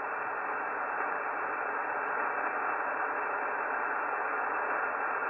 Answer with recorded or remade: recorded